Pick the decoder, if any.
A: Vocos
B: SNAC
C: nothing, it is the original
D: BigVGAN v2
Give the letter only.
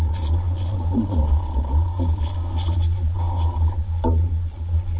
A